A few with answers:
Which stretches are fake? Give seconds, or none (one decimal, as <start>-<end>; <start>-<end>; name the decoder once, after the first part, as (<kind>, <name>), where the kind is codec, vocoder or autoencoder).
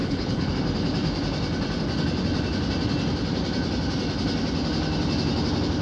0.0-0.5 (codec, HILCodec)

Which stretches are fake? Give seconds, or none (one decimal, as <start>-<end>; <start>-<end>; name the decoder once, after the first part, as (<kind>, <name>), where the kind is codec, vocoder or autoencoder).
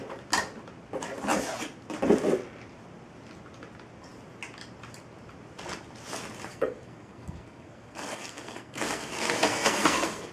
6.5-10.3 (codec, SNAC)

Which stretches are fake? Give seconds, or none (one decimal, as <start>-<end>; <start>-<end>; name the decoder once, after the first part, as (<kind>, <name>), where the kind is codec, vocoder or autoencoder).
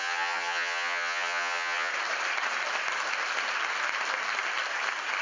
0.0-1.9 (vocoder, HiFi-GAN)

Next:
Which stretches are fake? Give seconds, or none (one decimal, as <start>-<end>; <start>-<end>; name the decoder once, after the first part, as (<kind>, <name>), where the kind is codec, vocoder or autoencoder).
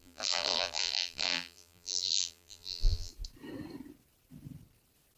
0.0-3.1 (vocoder, BigVGAN v2)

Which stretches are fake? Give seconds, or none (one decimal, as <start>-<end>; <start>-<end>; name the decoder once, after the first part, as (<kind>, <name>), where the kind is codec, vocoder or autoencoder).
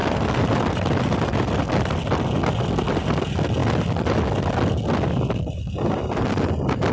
none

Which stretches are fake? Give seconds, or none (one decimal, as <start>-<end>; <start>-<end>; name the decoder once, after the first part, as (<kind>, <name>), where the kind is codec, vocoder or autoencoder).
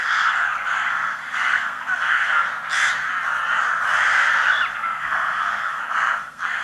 0.0-2.5 (codec, SNAC); 4.7-6.6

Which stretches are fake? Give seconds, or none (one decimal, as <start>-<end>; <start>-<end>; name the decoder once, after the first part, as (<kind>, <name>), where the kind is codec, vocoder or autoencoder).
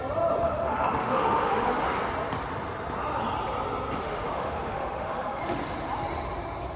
0.4-2.0 (autoencoder, DAC-VAE); 4.0-5.4